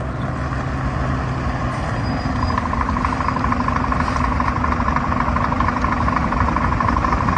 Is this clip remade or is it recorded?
recorded